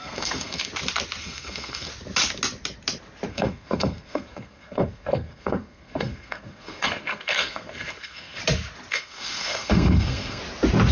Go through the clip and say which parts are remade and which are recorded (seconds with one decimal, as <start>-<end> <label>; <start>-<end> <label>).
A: 0.0-0.7 remade; 0.7-1.2 recorded; 1.2-1.9 remade; 1.9-3.3 recorded; 3.3-8.4 remade; 8.4-8.9 recorded; 8.9-10.4 remade; 10.4-10.9 recorded